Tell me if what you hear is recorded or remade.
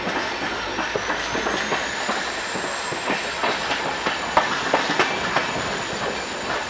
recorded